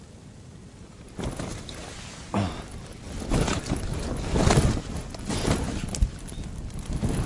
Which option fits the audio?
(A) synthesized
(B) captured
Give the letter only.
B